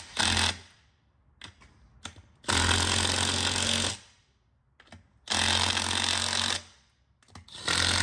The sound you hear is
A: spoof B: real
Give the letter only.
B